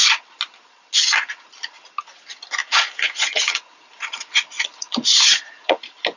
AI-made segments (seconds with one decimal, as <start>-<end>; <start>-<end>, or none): 2.6-5.8